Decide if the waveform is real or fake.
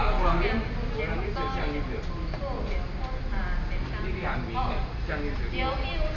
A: real